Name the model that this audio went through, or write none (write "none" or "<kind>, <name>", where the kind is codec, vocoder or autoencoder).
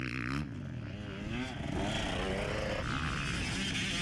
none